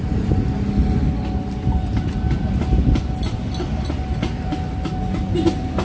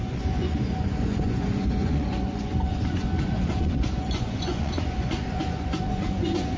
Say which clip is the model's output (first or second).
second